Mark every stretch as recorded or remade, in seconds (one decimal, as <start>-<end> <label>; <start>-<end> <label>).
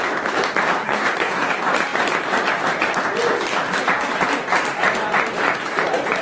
0.0-0.8 recorded; 0.8-1.5 remade; 1.5-6.2 recorded